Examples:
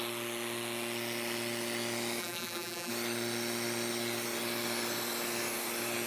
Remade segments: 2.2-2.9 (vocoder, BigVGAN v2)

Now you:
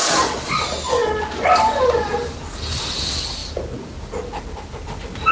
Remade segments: none

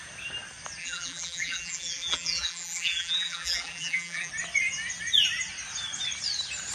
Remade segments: 0.8-4.3 (vocoder, BigVGAN v2)

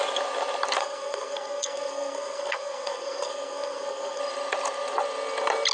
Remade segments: 0.8-4.2 (codec, SNAC)